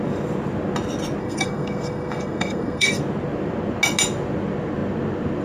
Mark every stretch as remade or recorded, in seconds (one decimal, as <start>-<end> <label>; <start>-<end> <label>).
0.0-1.2 recorded; 1.2-3.0 remade; 3.0-5.4 recorded